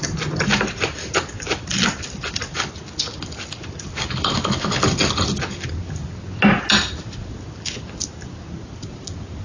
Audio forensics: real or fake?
real